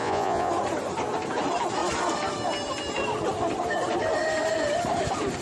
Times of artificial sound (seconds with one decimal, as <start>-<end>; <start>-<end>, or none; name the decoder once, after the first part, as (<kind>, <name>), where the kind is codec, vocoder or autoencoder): 0.0-0.5 (vocoder, Vocos)